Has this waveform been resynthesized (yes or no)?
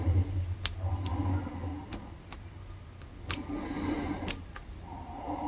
no